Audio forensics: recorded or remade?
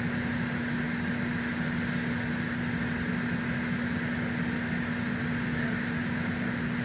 recorded